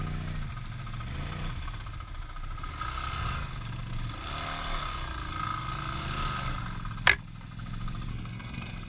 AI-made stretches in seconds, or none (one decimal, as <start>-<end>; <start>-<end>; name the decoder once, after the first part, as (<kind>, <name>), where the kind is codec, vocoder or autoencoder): 8.1-8.9 (codec, SNAC)